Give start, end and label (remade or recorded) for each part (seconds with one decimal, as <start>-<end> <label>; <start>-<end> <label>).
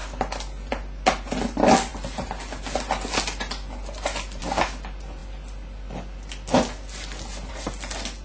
0.0-8.2 recorded